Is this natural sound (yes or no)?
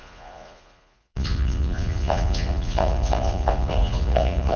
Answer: no